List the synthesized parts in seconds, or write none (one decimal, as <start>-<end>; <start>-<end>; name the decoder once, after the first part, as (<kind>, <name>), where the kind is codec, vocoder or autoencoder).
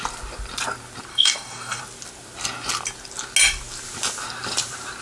1.1-1.8 (codec, DAC)